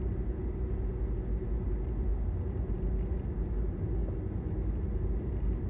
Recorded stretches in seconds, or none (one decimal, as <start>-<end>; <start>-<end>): 0.0-5.7